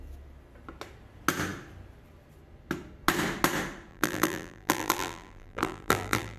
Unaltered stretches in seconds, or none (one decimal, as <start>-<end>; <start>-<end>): 0.0-3.9

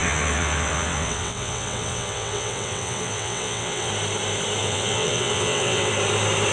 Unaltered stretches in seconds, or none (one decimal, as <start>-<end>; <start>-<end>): 3.9-4.6; 5.9-6.5

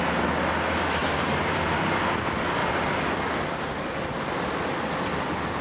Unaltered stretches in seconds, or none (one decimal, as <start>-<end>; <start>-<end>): 0.0-1.0; 1.6-5.6

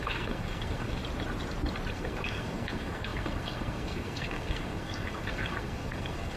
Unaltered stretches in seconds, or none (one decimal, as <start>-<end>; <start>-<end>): 1.0-1.9

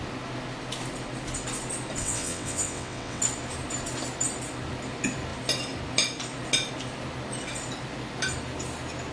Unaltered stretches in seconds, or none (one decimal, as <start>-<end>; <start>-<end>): 0.0-2.0; 3.2-9.1

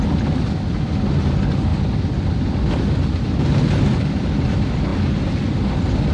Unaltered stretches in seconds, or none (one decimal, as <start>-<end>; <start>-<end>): 0.0-6.1

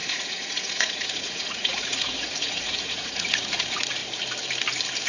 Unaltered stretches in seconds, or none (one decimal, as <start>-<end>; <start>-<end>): 4.0-5.1

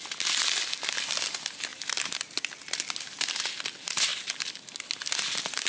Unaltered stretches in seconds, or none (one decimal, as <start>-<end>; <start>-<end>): 0.0-5.7